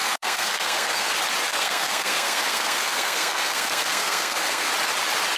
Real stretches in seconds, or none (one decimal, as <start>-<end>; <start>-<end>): 1.1-1.5; 4.7-5.4